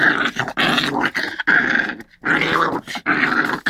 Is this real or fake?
real